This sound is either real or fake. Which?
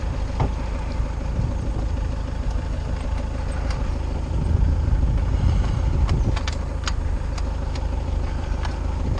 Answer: real